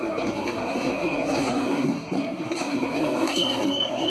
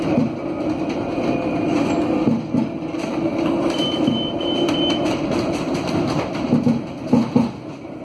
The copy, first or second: first